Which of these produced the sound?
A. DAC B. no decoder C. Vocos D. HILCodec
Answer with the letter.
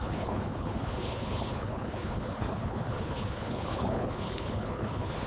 D